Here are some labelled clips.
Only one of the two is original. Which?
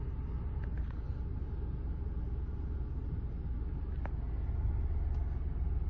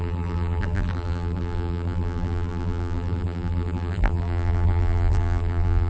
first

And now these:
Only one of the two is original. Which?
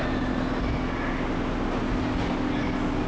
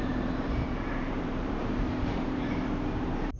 first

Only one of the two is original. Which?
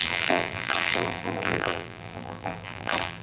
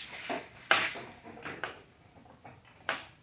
second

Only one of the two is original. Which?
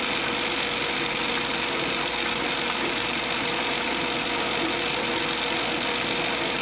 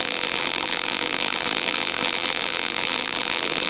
first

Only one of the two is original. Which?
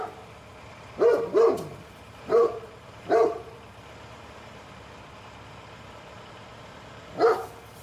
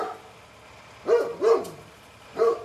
second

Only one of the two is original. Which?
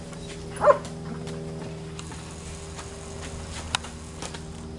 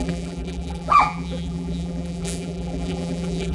first